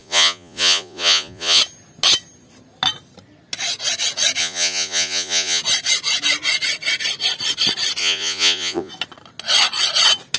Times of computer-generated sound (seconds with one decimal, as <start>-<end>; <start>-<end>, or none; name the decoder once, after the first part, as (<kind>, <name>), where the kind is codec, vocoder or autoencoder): 0.0-1.6 (vocoder, Vocos); 4.4-5.6; 8.0-8.9